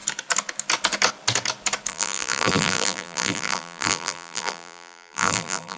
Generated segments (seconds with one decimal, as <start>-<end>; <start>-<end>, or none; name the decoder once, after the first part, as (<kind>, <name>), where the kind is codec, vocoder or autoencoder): 1.9-5.8 (vocoder, BigVGAN v2)